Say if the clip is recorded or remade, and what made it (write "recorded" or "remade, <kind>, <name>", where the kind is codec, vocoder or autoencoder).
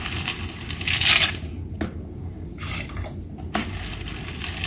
recorded